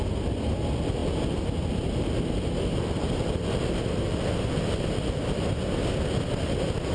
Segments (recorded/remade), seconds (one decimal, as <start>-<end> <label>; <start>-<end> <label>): 0.0-6.9 recorded